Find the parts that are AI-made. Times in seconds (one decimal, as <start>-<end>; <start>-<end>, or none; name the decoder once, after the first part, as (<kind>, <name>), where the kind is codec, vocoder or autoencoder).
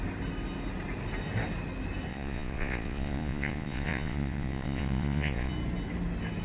2.1-5.5 (vocoder, Vocos)